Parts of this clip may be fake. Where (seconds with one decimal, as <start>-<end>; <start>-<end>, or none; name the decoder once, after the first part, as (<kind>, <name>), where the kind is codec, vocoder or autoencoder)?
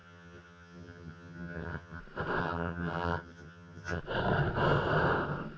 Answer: 0.0-2.0 (vocoder, HiFi-GAN); 2.4-4.0